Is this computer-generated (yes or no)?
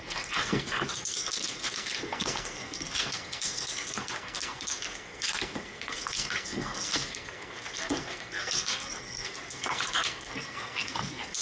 yes